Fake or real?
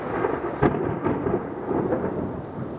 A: real